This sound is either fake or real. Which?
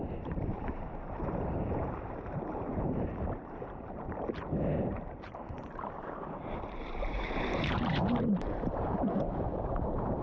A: fake